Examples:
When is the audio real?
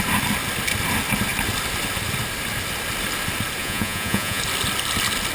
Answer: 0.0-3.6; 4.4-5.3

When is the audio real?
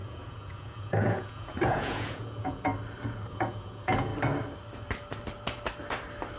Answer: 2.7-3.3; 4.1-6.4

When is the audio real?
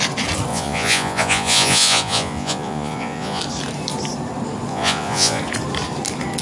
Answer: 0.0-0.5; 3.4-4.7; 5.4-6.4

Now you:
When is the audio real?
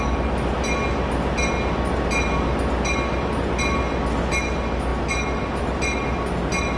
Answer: 0.0-6.8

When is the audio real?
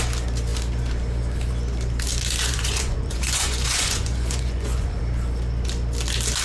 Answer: 0.0-2.5; 5.0-6.4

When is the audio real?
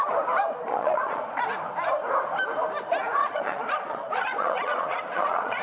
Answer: 0.0-0.6; 1.4-3.2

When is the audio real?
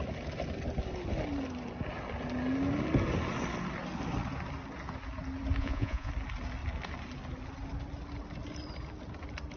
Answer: 0.0-5.6; 6.1-9.6